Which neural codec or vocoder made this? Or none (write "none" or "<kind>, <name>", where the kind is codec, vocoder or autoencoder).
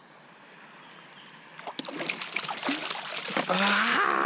none